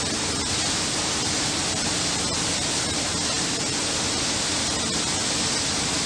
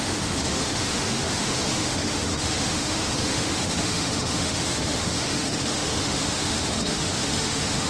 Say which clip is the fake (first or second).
second